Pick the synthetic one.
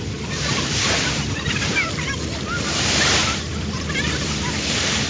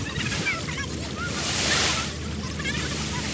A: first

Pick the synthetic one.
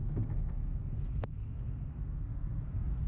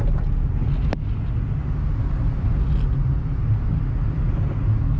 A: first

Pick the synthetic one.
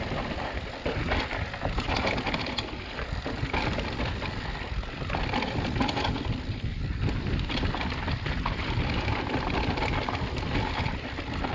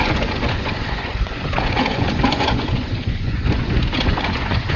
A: second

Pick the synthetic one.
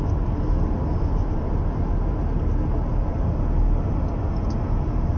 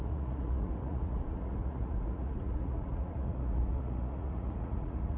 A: second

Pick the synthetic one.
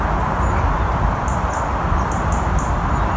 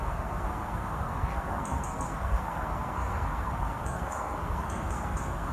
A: second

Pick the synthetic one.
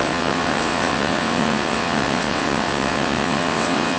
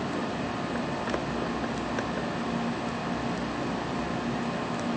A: first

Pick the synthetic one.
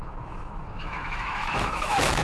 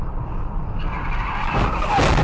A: first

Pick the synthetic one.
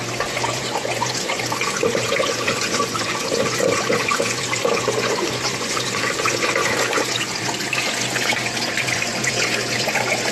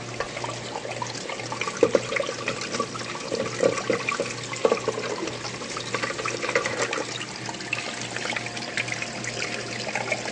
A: first